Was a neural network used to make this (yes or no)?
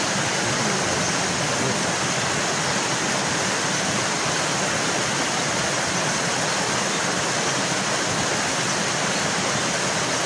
no